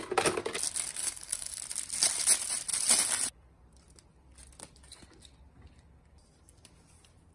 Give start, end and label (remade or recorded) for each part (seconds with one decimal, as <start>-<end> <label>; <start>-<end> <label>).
0.0-1.0 recorded; 1.0-1.6 remade; 1.6-7.3 recorded